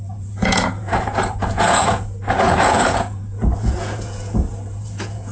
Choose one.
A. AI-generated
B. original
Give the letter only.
A